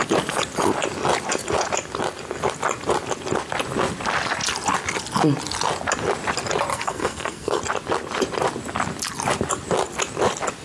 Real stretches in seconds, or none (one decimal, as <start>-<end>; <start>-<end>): 0.0-6.7; 7.6-10.6

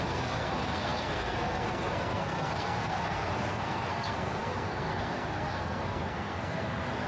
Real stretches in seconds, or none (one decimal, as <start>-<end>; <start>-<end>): none

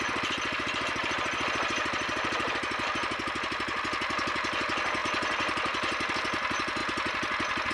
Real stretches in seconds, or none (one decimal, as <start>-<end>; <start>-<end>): 0.0-7.7

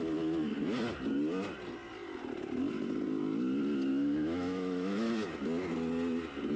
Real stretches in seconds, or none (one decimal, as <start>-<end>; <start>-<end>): 0.0-3.9; 5.1-6.6